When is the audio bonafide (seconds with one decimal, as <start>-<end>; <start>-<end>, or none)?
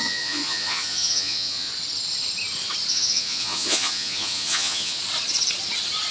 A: 1.7-2.9; 5.0-6.1